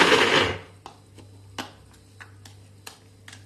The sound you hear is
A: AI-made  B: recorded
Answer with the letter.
B